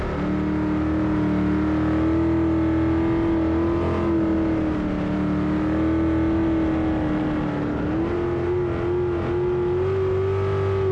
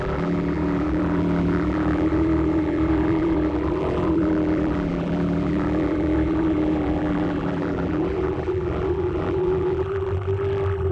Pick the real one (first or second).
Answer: first